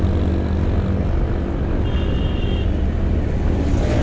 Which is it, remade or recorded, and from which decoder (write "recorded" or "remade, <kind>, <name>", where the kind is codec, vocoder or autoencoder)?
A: recorded